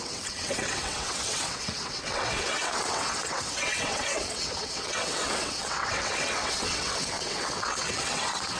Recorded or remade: remade